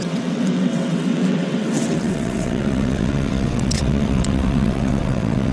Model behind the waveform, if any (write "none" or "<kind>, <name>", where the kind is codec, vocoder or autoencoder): vocoder, WaveNeXt